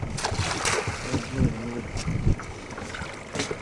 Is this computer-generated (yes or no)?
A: no